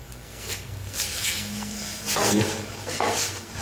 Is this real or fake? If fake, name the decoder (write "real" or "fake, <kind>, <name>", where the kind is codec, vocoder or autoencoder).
fake, codec, SNAC